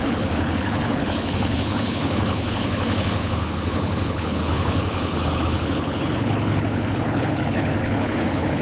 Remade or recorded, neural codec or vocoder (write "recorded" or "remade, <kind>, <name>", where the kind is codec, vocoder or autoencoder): remade, codec, HILCodec